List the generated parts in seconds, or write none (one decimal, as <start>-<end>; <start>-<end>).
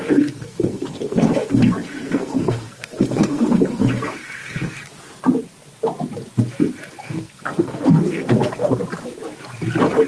0.0-4.8; 7.0-8.8